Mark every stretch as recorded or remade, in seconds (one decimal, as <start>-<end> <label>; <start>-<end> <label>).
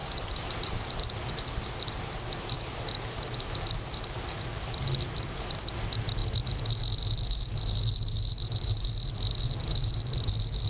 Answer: 0.0-10.7 recorded